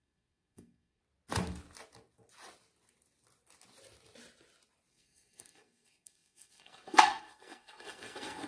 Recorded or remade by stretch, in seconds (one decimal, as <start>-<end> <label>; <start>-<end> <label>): 0.0-1.0 remade; 1.0-4.9 recorded; 4.9-8.5 remade